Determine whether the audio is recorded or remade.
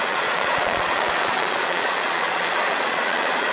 remade